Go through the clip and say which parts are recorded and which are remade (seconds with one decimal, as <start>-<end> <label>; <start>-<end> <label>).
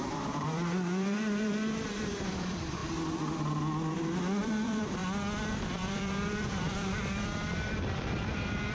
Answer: 0.0-2.8 remade; 2.8-4.4 recorded; 4.4-5.0 remade; 5.0-5.6 recorded; 5.6-8.7 remade